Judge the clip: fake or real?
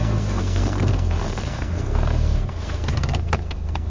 fake